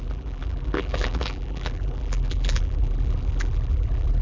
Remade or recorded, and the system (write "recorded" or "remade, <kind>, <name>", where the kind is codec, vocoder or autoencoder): remade, vocoder, BigVGAN v2